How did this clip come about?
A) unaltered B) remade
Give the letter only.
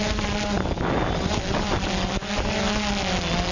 A